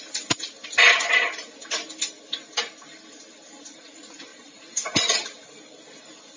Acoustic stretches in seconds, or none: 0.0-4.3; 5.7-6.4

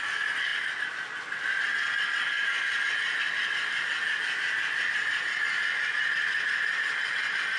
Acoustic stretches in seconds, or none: 0.0-7.6

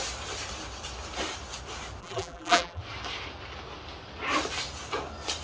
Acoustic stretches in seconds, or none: 0.0-2.0; 2.8-5.4

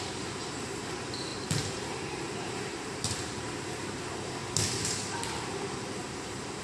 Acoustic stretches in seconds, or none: 4.4-5.4

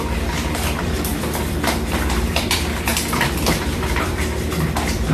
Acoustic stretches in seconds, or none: 2.9-3.5

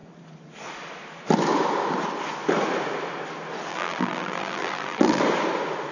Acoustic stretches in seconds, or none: 0.0-3.7; 5.2-5.9

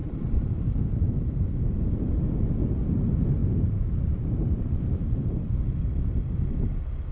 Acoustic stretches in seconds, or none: 0.7-3.4; 5.7-7.1

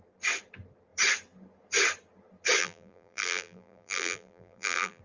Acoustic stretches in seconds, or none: 0.0-2.6